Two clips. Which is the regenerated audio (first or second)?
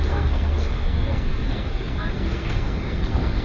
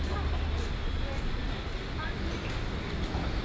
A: first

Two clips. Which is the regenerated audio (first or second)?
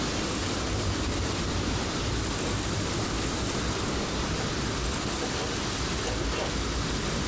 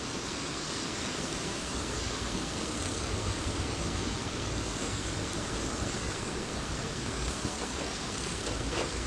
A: second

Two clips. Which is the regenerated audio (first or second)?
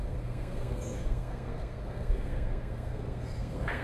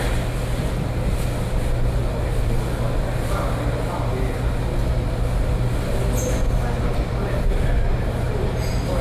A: first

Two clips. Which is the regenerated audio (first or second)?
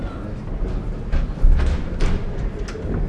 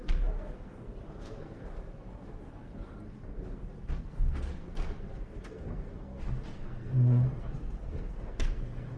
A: second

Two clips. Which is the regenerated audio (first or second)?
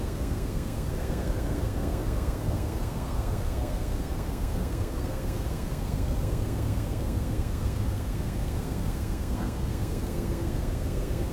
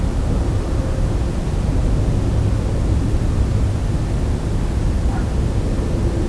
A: first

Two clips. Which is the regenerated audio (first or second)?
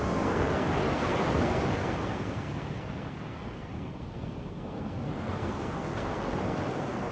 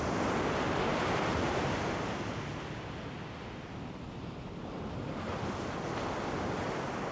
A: first